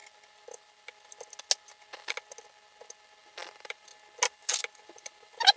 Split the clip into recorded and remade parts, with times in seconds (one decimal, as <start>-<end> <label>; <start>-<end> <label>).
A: 0.0-3.2 recorded; 3.2-3.9 remade; 3.9-4.8 recorded; 4.8-5.6 remade